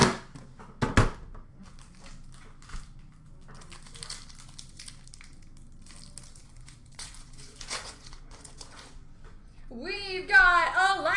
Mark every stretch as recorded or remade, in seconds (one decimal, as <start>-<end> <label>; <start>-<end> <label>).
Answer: 0.0-6.4 recorded; 6.4-9.7 remade; 9.7-11.2 recorded